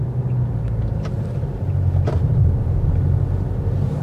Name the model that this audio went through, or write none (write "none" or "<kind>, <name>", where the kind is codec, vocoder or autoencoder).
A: none